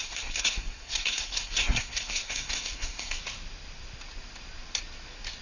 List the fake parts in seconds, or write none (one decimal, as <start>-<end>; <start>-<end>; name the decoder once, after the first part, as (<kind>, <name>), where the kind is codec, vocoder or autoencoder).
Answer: 0.0-3.2 (codec, SNAC)